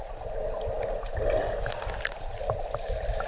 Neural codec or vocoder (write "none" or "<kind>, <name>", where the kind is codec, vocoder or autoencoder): none